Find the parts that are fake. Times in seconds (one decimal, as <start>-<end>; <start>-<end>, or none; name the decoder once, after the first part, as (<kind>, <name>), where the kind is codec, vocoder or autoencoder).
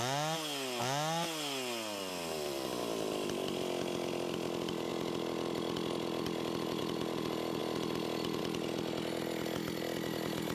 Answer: none